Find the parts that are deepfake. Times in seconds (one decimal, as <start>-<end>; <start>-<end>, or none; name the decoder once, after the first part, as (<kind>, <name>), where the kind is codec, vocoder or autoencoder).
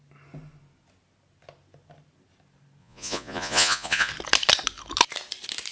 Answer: 2.8-4.1 (vocoder, Vocos)